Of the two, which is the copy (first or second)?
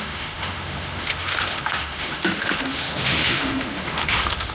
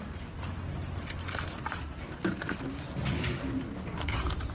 first